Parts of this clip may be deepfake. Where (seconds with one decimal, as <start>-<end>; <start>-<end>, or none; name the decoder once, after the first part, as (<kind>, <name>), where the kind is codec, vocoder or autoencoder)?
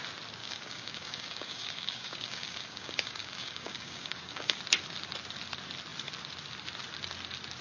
0.4-4.6 (codec, DAC)